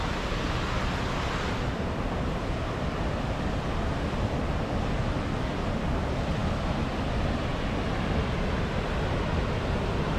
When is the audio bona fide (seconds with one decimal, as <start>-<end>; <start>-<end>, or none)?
0.0-10.2